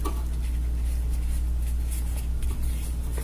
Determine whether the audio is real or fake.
real